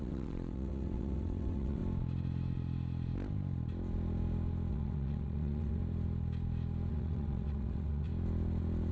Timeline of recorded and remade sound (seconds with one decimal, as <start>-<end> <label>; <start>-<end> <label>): 0.0-1.8 remade; 1.8-4.7 recorded; 4.7-5.8 remade; 5.8-6.9 recorded; 6.9-8.1 remade; 8.1-8.9 recorded